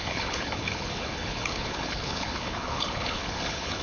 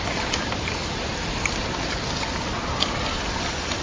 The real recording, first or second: second